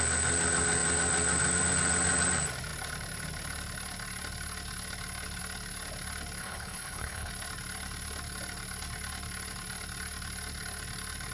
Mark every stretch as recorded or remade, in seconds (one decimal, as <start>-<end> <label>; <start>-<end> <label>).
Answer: 0.0-6.4 recorded; 6.4-7.3 remade; 7.3-11.3 recorded